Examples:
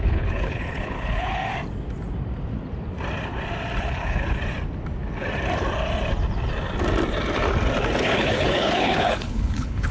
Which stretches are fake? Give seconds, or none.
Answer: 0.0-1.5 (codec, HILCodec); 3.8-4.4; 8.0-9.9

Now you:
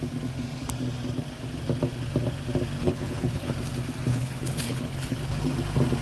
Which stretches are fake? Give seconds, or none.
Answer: 2.8-3.5 (codec, HILCodec); 4.1-5.4

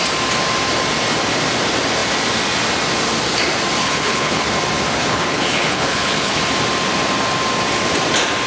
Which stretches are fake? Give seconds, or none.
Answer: 3.8-4.5 (codec, HILCodec); 5.0-6.4

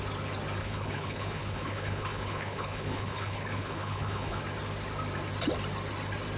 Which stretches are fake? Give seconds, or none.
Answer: 0.6-4.4 (codec, HILCodec)

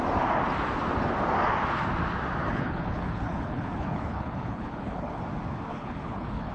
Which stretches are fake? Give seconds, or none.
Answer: 2.4-5.2 (codec, HILCodec); 5.7-6.5

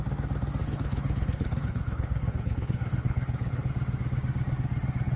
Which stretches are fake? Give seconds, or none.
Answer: 0.6-3.7 (codec, HILCodec)